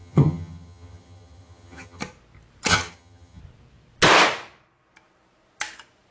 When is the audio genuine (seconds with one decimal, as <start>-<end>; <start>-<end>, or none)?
2.0-2.7; 3.4-6.1